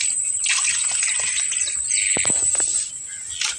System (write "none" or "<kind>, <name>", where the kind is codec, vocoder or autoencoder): none